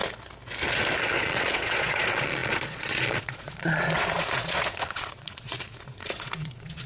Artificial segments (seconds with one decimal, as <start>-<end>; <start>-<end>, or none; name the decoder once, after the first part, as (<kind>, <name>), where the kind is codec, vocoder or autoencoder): 1.2-6.9 (vocoder, Vocos)